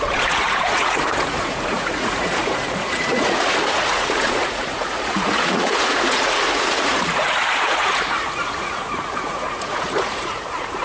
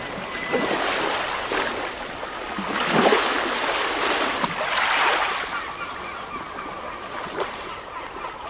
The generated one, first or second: first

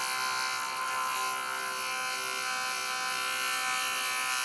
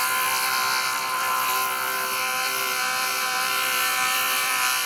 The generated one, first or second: second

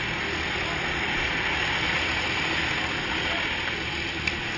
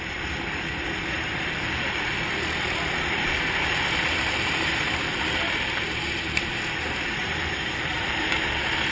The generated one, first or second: second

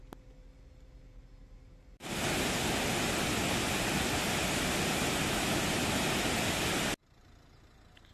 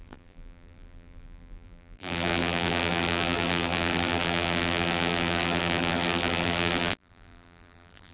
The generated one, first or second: second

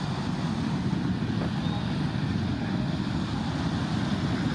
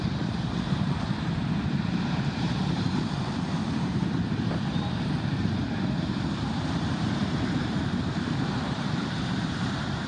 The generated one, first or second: second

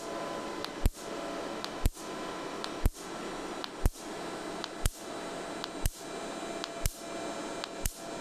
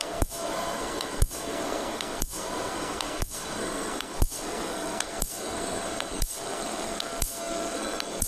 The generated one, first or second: second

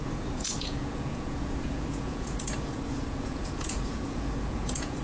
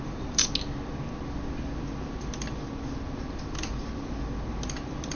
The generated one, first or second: first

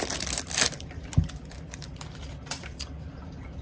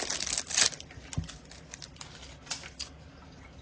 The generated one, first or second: first